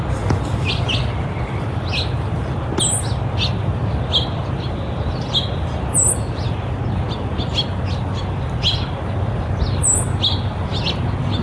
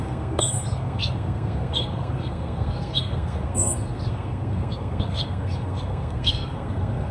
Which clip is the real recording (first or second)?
first